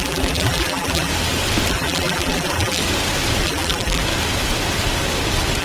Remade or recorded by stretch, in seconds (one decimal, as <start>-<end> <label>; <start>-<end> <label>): 0.0-1.1 remade; 1.1-1.7 recorded; 1.7-2.8 remade; 2.8-3.4 recorded; 3.4-4.0 remade; 4.0-5.6 recorded